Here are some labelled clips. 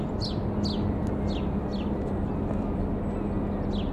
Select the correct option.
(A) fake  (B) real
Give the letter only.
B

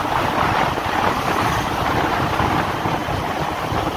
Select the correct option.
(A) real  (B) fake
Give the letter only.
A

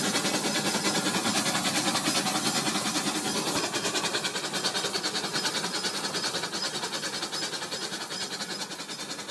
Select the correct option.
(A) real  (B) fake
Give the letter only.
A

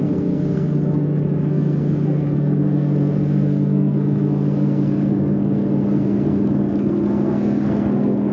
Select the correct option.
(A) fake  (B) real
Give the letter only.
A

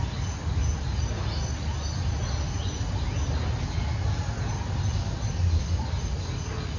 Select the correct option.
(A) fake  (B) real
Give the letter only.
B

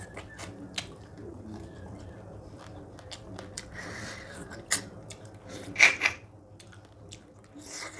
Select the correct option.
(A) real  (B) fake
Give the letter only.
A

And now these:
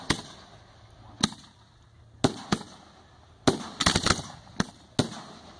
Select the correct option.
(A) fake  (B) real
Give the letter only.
B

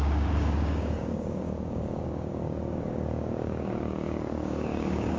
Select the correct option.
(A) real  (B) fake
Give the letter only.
B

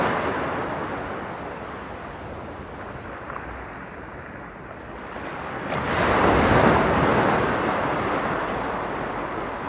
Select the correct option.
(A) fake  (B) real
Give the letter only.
B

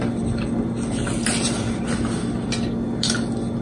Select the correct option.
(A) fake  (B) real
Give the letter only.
B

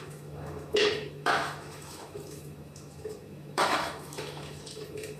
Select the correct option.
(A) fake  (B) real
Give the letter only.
A